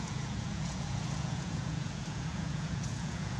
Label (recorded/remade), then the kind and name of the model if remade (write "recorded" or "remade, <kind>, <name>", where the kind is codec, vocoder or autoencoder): remade, vocoder, Vocos